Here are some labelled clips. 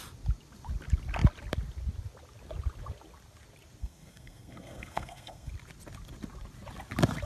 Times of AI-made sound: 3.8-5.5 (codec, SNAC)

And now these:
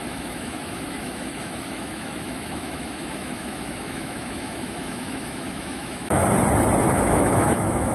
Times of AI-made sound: 0.0-6.2 (autoencoder, DAC-VAE); 6.9-7.9

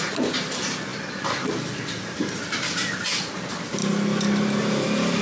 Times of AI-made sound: none

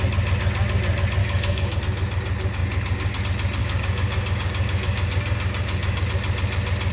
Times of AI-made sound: 1.2-1.8 (codec, DAC); 2.6-3.2; 3.6-6.1

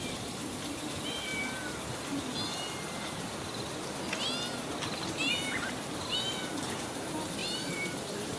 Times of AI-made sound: 0.0-1.3 (vocoder, BigVGAN v2); 5.3-8.4

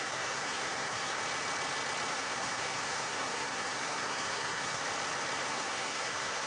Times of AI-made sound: 0.0-1.2 (codec, SNAC); 2.1-4.8; 5.5-6.5